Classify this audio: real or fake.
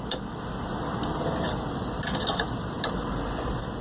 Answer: real